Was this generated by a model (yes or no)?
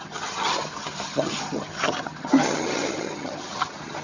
yes